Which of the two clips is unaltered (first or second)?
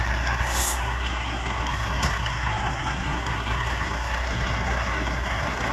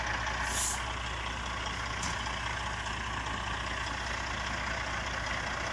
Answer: second